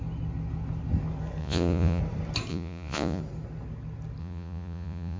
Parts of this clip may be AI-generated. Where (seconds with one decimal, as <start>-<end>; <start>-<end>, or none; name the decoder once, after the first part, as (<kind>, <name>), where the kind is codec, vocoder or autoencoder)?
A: 1.4-2.0 (vocoder, Vocos); 2.5-3.2; 4.2-5.2